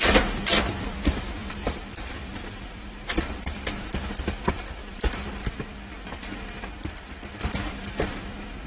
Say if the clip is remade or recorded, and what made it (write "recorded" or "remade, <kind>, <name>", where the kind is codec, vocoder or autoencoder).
remade, vocoder, BigVGAN v2